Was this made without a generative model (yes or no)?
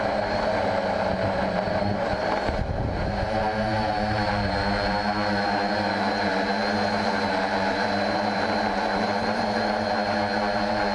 no